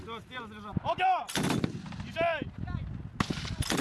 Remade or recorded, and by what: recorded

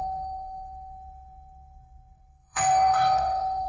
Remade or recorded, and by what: remade, codec, SNAC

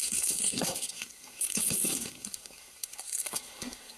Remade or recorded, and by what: remade, codec, SNAC